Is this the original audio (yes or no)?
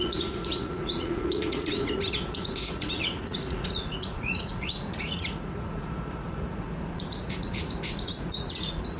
no